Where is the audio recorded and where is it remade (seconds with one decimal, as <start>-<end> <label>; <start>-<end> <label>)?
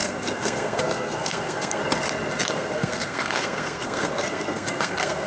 0.0-1.8 remade; 1.8-2.5 recorded; 2.5-5.3 remade